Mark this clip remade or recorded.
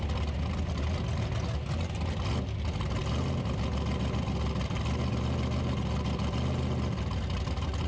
recorded